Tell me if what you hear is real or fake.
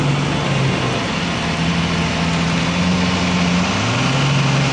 real